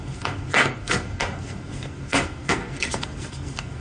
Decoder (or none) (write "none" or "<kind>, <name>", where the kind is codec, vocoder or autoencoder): codec, SNAC